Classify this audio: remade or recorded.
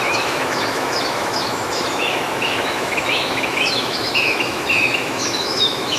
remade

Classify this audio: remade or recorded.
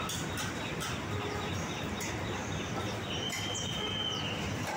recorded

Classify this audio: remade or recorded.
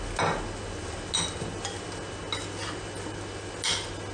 recorded